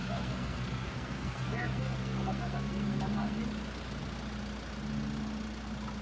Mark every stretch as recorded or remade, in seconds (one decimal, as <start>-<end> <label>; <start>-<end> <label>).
0.0-3.4 remade; 3.4-6.0 recorded